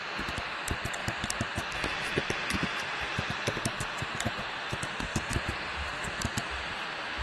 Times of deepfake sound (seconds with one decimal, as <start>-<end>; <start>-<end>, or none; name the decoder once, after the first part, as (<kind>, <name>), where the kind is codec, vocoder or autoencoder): 1.0-4.4 (vocoder, BigVGAN v2); 5.1-5.9